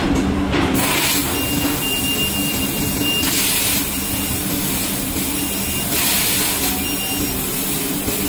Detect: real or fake real